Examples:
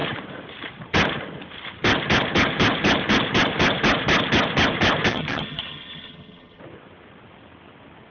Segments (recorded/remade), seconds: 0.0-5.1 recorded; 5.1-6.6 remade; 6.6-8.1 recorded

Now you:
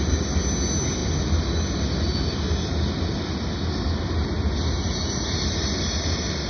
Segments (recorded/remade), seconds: 0.0-6.5 recorded

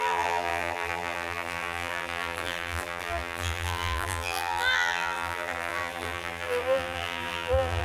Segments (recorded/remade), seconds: 0.0-7.8 remade